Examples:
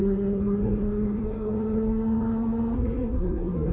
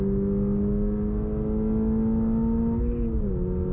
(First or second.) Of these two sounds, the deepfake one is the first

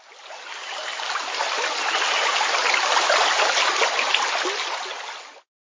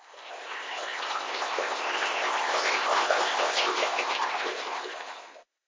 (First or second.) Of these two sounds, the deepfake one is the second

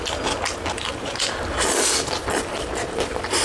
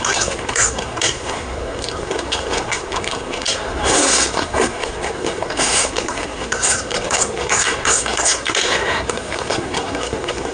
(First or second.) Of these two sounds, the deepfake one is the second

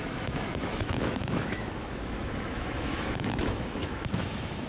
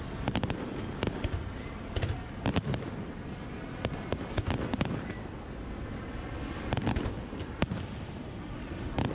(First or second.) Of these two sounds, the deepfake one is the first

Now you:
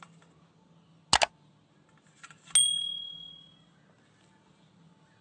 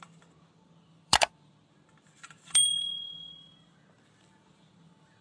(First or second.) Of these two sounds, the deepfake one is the second